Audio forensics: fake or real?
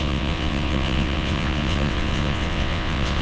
fake